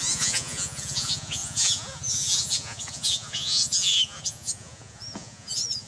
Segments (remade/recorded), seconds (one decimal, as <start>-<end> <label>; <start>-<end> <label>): 0.0-5.9 remade

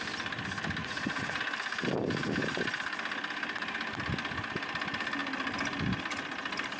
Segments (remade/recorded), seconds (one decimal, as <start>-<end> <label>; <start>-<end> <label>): 0.0-0.8 recorded; 0.8-1.4 remade; 1.4-6.8 recorded

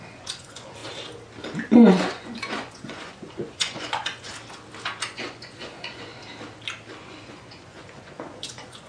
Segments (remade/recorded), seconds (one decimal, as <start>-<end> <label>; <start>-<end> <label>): 0.0-0.8 remade; 0.8-1.9 recorded; 1.9-4.3 remade; 4.3-5.1 recorded; 5.1-6.1 remade; 6.1-7.0 recorded; 7.0-8.9 remade

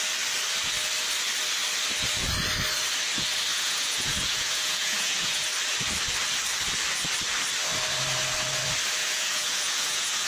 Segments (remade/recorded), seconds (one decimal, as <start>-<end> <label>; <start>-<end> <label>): 0.0-3.5 recorded; 3.5-5.5 remade; 5.5-9.0 recorded; 9.0-10.3 remade

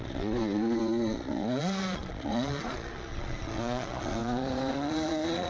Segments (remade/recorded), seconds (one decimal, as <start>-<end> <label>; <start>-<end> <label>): 0.0-5.5 remade